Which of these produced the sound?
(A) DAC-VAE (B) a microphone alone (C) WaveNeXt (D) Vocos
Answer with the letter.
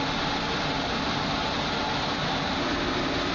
B